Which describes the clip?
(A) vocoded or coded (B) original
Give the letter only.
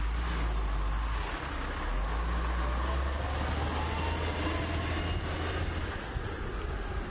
B